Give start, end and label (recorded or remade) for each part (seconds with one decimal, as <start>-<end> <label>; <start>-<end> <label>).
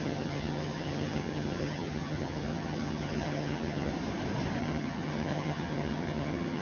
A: 0.0-3.9 remade; 3.9-4.6 recorded; 4.6-6.6 remade